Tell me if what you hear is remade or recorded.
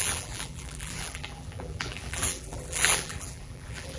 remade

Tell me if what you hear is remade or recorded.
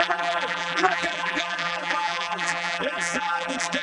remade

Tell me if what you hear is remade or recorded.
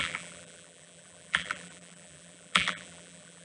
remade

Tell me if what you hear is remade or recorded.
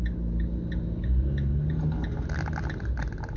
recorded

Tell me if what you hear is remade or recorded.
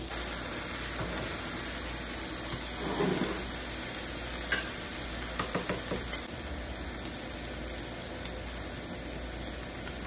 recorded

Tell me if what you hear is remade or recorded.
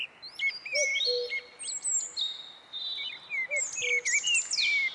recorded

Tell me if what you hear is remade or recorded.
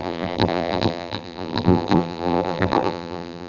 remade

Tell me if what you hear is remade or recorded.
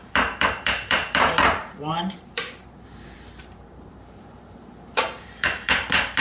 remade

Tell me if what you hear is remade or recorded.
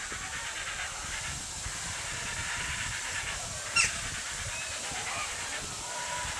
remade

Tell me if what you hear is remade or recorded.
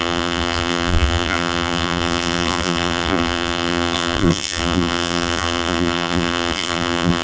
remade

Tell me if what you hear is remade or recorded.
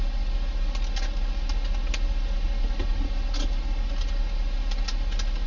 recorded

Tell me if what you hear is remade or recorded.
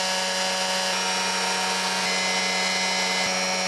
recorded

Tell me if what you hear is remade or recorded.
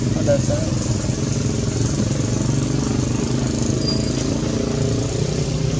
recorded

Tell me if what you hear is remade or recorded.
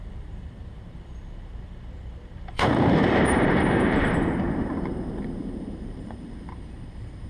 remade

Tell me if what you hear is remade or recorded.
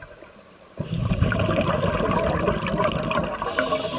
recorded